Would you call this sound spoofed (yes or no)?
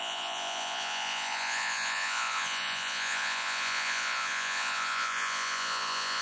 yes